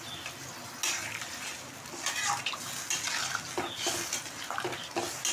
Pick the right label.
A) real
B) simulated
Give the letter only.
A